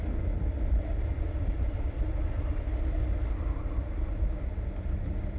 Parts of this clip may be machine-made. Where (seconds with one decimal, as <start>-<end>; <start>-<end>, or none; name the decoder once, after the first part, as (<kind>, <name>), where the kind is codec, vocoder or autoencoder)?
none